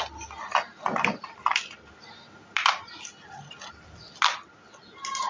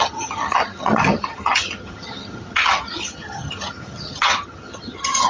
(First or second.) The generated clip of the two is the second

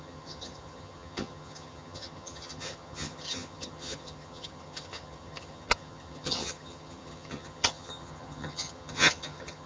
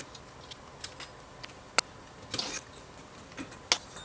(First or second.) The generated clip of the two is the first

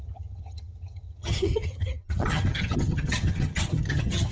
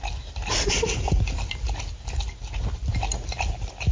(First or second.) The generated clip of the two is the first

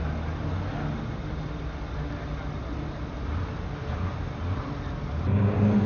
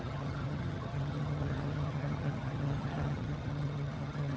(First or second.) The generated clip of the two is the second